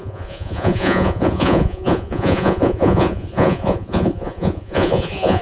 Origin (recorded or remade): remade